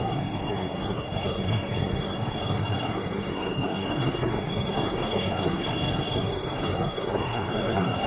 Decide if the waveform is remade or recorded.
remade